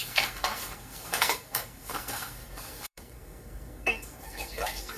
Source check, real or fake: fake